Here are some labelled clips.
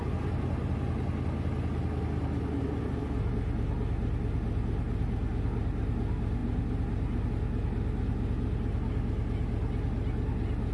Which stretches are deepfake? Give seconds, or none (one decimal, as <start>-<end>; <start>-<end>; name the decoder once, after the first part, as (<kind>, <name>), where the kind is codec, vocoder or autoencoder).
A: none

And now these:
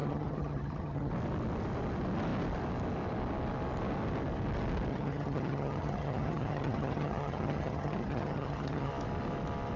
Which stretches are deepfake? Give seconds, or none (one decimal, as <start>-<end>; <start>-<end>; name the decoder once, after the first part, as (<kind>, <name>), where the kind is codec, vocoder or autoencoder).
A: 0.0-1.1 (vocoder, HiFi-GAN); 4.9-8.9

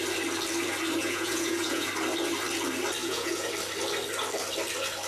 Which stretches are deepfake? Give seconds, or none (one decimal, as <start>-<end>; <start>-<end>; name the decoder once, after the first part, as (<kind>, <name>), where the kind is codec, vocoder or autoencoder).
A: 1.0-1.9 (vocoder, Vocos); 3.0-3.5